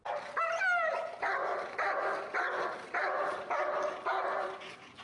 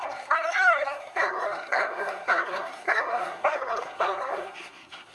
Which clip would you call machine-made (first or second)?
second